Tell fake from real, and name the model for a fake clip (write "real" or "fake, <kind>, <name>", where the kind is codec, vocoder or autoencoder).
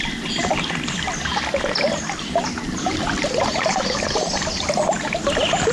real